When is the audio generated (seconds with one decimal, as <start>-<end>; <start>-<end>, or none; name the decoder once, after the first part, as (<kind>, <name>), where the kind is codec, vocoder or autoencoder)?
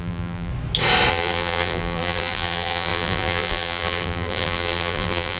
0.0-0.5 (vocoder, BigVGAN v2); 1.1-5.4